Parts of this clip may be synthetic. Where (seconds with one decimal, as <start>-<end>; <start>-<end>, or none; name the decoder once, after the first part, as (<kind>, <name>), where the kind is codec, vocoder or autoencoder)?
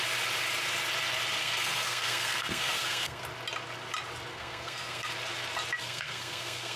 1.4-3.2 (codec, SNAC); 4.3-5.1; 5.8-6.8